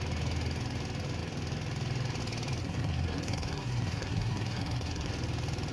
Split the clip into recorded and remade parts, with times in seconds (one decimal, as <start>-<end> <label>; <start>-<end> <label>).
0.0-2.6 recorded; 2.6-5.1 remade; 5.1-5.7 recorded